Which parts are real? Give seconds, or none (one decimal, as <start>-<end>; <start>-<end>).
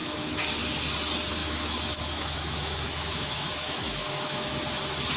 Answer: 0.5-1.4; 4.5-5.2